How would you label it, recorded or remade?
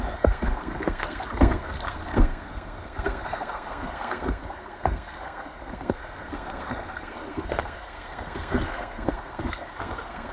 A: remade